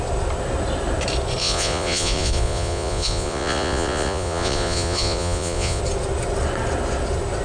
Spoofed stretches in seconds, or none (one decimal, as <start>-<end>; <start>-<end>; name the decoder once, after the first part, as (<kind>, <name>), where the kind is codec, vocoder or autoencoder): 1.4-5.8 (vocoder, Vocos)